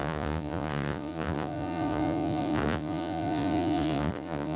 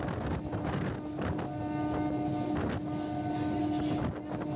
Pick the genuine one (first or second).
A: second